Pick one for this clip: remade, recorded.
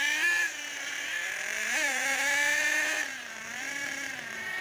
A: remade